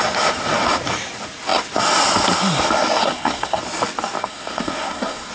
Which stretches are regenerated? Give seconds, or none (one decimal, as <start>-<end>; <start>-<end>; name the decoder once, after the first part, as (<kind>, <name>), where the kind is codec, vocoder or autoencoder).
3.0-3.6 (codec, SNAC); 4.2-5.3